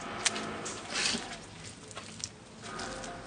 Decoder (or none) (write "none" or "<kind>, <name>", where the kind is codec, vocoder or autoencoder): none